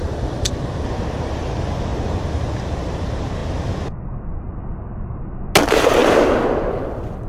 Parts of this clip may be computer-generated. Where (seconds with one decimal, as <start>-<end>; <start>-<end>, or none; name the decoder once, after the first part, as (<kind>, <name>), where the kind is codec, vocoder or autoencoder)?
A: none